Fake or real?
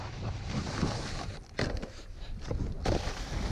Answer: real